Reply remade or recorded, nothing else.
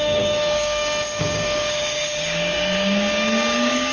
remade